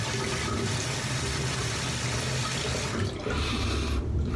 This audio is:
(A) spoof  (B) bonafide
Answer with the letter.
B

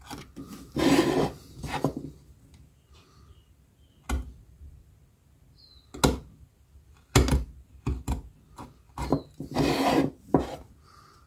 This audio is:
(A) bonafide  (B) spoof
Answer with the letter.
A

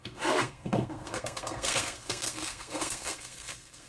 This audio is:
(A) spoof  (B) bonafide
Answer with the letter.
A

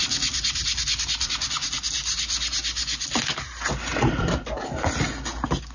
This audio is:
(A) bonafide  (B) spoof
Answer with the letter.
A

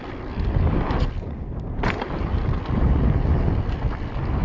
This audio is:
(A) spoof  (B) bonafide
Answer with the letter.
B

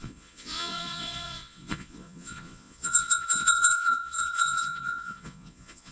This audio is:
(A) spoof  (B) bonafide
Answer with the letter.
A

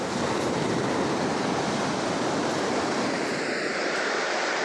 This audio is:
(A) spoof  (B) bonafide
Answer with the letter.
B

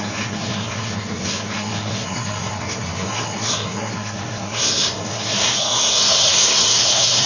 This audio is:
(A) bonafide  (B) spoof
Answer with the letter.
B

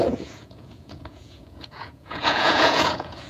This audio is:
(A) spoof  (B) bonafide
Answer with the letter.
A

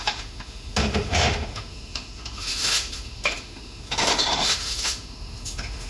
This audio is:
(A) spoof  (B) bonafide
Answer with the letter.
A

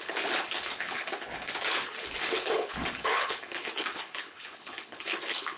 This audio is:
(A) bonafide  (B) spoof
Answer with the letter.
B